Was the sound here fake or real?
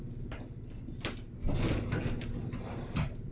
real